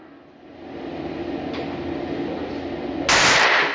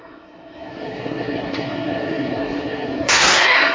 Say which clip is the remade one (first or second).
second